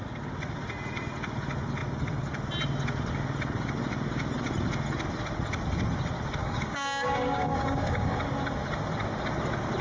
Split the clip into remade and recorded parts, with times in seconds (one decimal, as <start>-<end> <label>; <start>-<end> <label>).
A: 0.0-6.4 recorded; 6.4-8.2 remade; 8.2-9.8 recorded